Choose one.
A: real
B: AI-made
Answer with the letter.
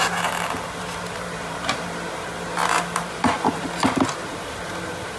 B